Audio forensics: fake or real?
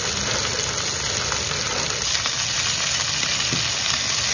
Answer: real